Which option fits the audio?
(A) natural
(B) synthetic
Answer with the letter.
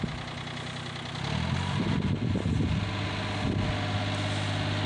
A